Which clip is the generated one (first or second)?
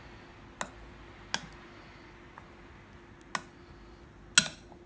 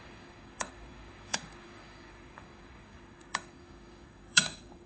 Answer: second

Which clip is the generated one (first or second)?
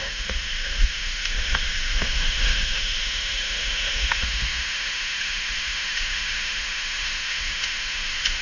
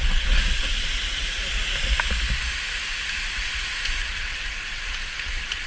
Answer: first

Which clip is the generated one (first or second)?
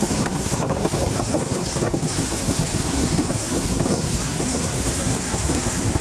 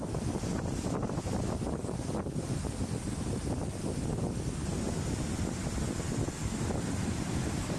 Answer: first